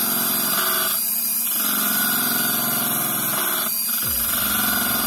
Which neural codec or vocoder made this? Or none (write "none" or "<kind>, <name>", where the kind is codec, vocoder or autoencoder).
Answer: none